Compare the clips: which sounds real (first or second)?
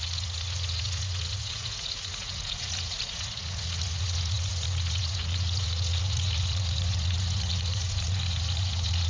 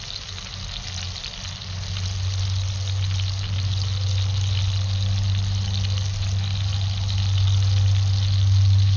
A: second